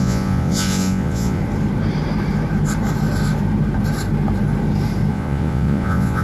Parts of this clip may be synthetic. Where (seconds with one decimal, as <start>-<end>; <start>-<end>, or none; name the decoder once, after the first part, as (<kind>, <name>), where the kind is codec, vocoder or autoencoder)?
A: 0.0-1.4 (vocoder, Vocos); 5.1-6.2